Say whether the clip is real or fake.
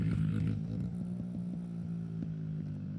real